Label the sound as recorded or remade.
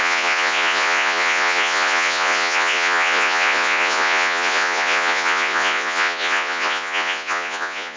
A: remade